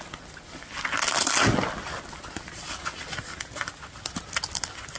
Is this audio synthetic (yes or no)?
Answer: no